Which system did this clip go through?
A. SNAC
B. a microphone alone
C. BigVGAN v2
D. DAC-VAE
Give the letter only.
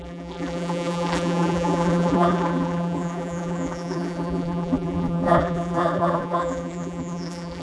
C